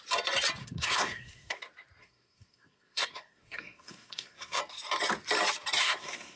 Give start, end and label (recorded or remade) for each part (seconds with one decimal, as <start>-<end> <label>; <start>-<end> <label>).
0.0-0.6 recorded; 0.6-1.6 remade; 1.6-2.0 recorded; 2.0-4.6 remade; 4.6-5.8 recorded; 5.8-6.4 remade